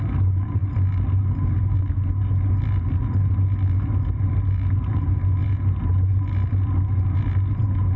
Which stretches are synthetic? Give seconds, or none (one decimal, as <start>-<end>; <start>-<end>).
5.4-6.2